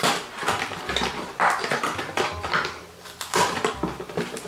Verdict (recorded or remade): remade